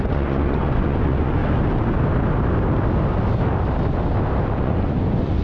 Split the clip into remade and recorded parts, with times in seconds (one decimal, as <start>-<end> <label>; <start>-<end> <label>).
0.0-1.4 remade; 1.4-4.6 recorded; 4.6-5.4 remade